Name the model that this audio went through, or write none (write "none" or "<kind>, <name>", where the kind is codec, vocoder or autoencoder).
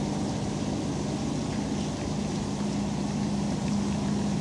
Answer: none